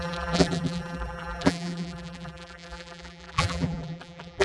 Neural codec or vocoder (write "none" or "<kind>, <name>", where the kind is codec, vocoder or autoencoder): vocoder, BigVGAN v2